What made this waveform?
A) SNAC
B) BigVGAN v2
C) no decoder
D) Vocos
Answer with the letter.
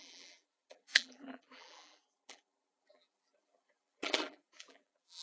B